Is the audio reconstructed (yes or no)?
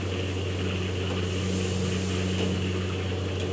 no